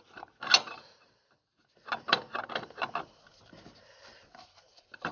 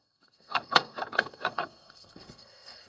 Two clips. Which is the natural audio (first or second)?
first